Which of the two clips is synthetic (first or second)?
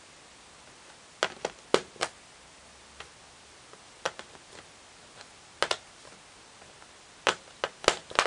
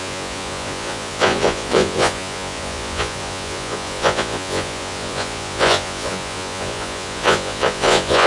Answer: second